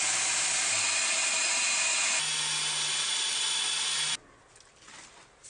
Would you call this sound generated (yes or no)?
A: no